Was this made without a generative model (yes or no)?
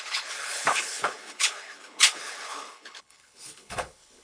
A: no